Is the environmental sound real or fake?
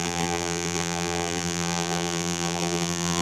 fake